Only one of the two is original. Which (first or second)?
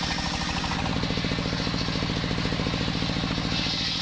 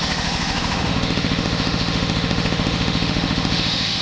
first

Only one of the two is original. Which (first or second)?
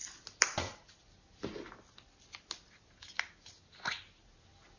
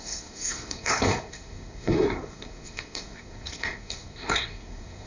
first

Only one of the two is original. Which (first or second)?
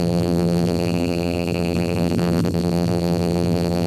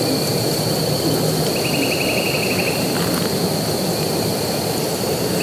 second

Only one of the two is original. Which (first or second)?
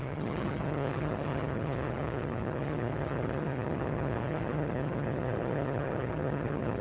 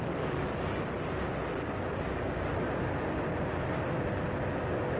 second